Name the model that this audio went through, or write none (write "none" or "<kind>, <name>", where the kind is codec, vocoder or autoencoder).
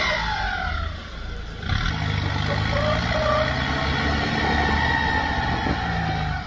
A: none